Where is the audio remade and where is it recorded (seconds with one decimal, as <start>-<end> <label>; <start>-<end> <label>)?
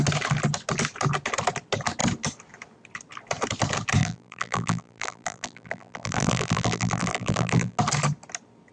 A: 0.0-4.0 recorded; 4.0-7.8 remade; 7.8-8.7 recorded